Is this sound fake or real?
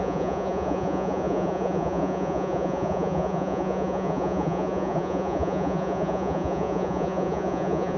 fake